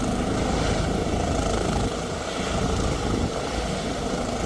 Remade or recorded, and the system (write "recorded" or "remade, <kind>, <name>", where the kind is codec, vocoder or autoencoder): remade, vocoder, BigVGAN v2